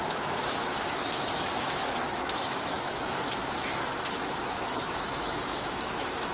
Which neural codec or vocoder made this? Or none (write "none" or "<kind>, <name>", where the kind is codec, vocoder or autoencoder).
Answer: autoencoder, DAC-VAE